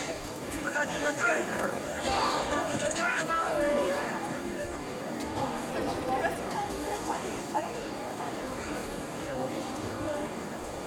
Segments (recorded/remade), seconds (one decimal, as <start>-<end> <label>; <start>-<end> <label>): 0.0-5.7 remade; 5.7-6.4 recorded; 6.4-10.9 remade